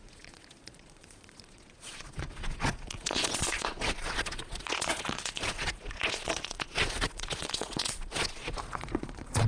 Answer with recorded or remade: remade